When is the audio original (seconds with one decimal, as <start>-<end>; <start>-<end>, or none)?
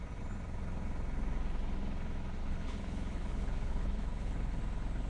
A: 0.0-2.4; 4.6-5.1